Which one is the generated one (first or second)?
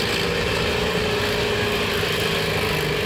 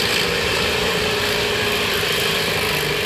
second